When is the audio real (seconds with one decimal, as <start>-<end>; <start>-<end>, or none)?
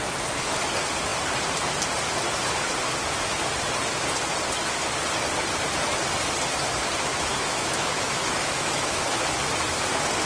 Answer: 0.0-7.1; 9.0-10.3